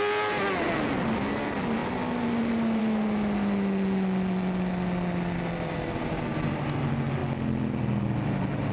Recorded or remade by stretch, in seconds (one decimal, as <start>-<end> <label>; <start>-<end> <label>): 0.0-8.7 recorded